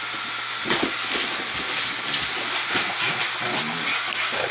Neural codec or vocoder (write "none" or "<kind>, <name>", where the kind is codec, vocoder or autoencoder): none